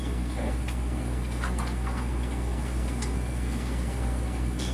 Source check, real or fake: fake